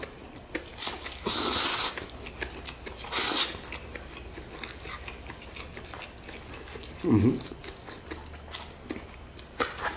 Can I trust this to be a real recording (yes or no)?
yes